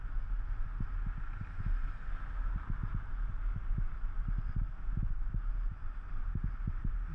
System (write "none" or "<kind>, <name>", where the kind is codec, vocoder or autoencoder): none